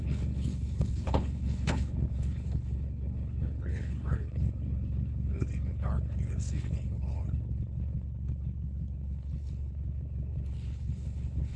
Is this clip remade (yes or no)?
yes